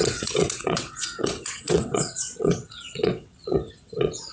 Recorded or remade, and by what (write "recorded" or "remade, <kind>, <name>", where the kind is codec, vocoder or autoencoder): remade, vocoder, WaveNeXt